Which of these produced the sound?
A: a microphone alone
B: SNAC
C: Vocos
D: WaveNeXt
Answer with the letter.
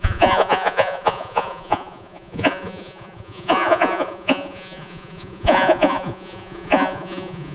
C